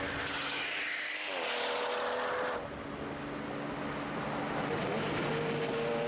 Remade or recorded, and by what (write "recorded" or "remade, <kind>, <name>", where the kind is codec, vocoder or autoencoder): recorded